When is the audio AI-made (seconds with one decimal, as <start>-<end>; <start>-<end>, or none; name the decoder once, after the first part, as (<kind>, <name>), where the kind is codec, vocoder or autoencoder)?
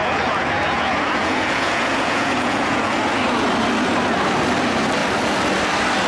0.0-3.2 (vocoder, Vocos)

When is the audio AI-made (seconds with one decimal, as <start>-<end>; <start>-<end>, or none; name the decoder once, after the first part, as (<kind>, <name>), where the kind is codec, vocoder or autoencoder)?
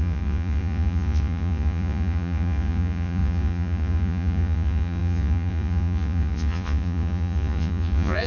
0.0-8.3 (vocoder, Vocos)